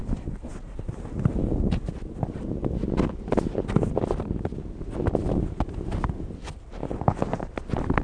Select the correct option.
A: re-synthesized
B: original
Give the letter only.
B